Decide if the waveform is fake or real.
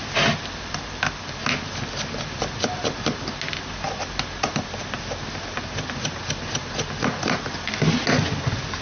real